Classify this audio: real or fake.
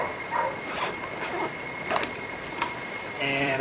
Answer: fake